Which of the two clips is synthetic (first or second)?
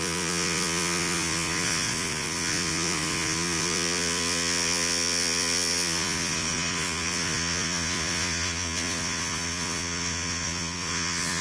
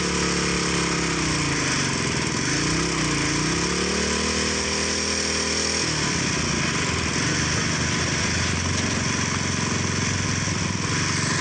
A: first